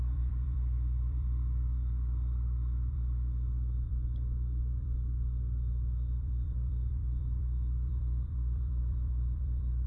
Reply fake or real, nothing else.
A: fake